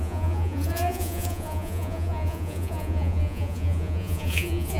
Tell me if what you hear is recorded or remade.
remade